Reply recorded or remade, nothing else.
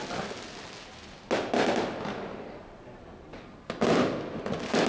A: recorded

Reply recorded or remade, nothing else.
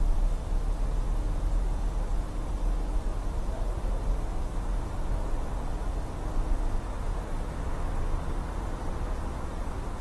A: recorded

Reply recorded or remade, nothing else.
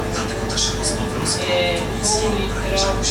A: recorded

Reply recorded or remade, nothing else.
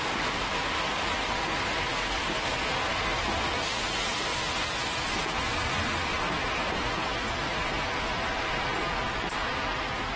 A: remade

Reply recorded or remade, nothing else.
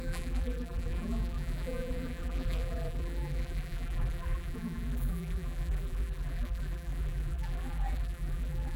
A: remade